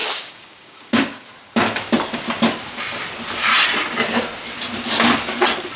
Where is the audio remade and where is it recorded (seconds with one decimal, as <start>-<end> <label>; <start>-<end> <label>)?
0.0-1.3 remade; 1.3-5.8 recorded